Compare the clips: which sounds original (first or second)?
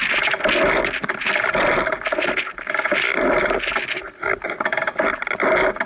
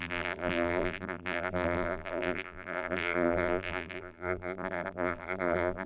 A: first